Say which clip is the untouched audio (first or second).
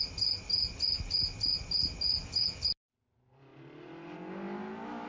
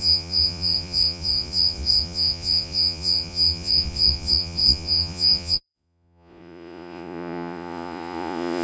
first